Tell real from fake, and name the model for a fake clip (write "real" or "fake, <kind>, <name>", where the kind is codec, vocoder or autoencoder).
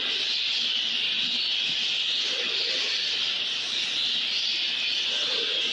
real